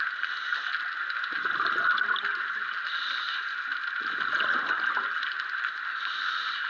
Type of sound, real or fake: real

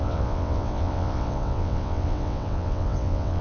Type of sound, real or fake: fake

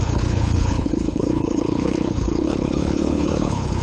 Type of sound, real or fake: fake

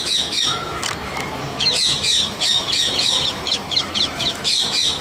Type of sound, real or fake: fake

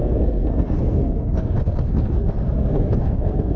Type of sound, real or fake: fake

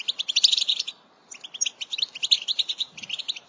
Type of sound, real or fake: fake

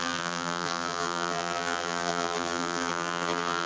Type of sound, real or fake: fake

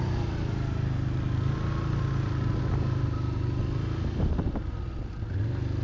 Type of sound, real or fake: real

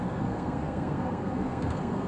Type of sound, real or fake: fake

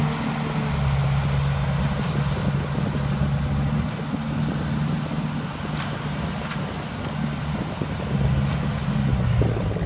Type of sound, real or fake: real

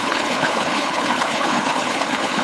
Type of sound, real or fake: fake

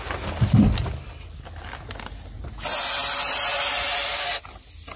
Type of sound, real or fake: real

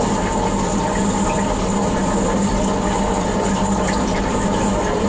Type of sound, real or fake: real